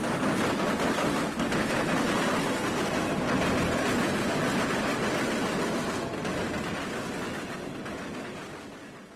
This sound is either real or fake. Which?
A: real